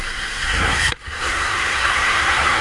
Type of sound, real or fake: fake